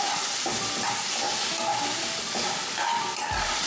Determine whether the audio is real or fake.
real